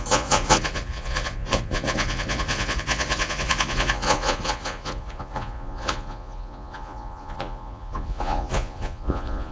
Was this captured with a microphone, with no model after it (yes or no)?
no